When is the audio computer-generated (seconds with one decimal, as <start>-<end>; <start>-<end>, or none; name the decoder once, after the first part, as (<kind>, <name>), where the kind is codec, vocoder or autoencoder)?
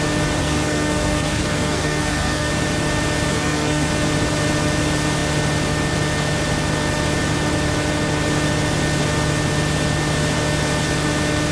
0.4-2.5 (codec, SNAC); 3.3-3.9